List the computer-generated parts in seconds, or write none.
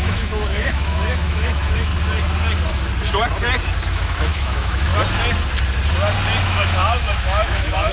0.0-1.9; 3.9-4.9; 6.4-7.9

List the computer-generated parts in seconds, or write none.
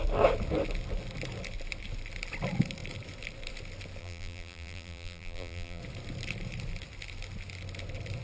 4.0-5.8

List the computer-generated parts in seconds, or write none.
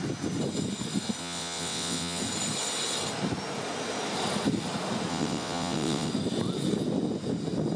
1.2-2.2; 5.1-6.1